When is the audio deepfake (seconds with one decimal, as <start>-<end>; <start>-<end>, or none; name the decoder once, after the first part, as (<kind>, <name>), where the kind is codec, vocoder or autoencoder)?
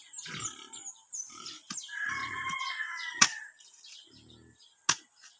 2.2-3.8 (vocoder, Vocos)